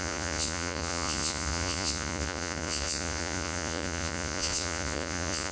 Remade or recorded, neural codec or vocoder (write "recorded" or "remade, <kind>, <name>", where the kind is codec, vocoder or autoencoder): remade, vocoder, Vocos